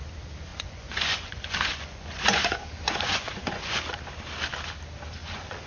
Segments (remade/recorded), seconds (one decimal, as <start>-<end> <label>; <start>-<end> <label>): 0.0-0.5 recorded; 0.5-3.8 remade; 3.8-5.2 recorded; 5.2-5.7 remade